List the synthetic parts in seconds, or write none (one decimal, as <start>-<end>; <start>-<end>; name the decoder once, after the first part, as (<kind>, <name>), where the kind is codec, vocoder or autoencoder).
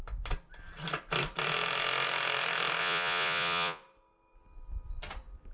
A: 2.8-3.8 (vocoder, Vocos)